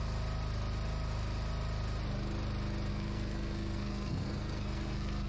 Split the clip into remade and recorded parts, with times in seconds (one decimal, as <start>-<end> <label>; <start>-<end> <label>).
0.0-2.9 recorded; 2.9-5.3 remade